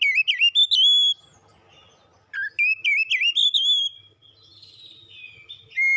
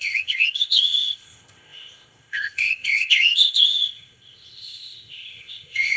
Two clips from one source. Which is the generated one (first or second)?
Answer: second